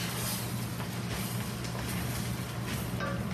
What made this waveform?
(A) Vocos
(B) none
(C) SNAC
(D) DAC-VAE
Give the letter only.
B